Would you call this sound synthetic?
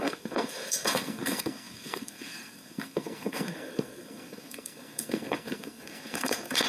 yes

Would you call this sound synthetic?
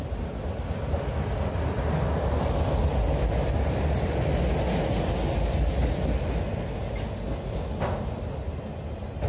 no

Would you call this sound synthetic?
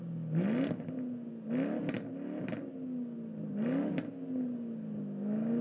no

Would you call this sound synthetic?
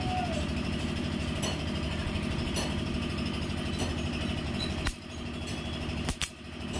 no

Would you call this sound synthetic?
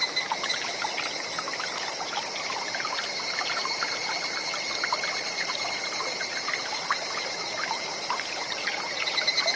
no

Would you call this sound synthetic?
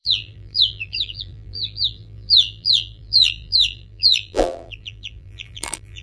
yes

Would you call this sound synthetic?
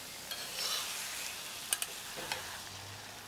no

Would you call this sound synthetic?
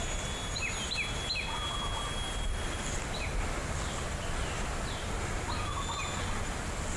no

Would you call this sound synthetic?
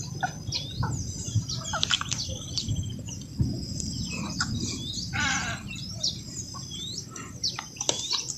yes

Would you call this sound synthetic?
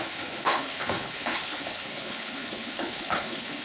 yes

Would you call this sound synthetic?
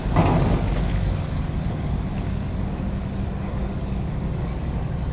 yes